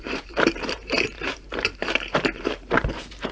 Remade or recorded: remade